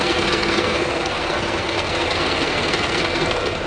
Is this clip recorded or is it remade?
remade